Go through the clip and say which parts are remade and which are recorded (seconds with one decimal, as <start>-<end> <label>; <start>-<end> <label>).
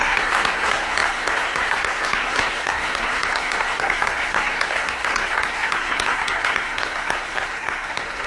0.0-8.3 remade